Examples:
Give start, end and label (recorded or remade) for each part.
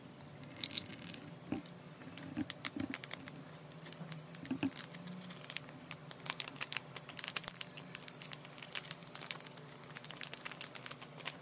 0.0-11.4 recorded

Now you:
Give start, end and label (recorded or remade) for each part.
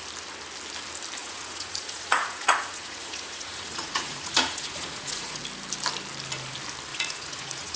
0.0-1.2 recorded; 1.2-5.4 remade; 5.4-6.9 recorded; 6.9-7.8 remade